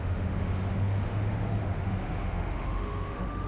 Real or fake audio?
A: fake